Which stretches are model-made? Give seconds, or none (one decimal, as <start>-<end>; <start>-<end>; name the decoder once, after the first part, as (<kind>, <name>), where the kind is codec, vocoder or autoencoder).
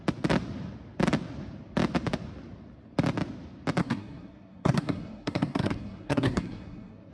3.8-7.1 (codec, SNAC)